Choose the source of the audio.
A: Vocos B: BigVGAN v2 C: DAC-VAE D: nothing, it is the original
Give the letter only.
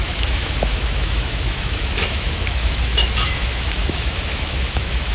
C